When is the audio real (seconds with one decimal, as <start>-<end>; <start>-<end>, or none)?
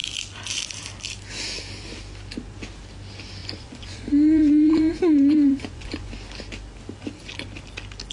0.0-3.4; 6.1-8.1